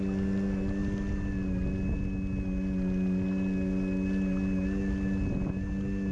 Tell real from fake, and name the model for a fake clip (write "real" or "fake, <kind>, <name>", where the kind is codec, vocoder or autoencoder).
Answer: real